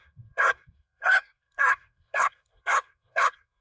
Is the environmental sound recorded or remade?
remade